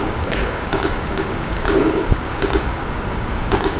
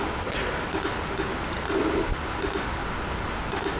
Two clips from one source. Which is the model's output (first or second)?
first